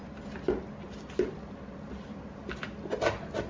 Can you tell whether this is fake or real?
real